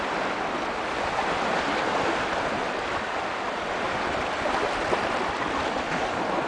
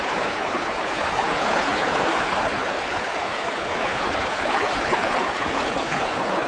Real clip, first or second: first